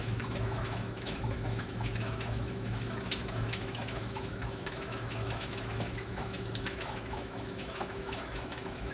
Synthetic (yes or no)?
yes